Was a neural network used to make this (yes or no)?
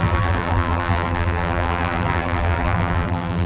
yes